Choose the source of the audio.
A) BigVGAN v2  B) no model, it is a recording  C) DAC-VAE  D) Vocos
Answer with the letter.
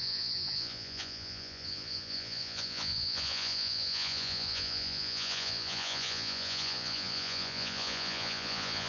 D